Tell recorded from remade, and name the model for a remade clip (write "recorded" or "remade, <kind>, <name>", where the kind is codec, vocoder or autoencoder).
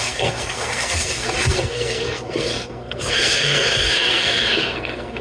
remade, codec, SNAC